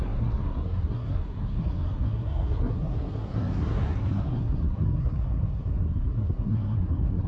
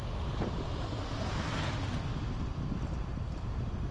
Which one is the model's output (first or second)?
first